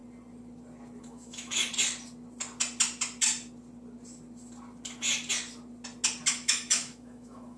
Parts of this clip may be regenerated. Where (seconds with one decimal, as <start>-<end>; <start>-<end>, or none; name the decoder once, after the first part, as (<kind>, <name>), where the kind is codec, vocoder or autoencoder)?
1.0-1.7 (autoencoder, DAC-VAE); 6.3-7.6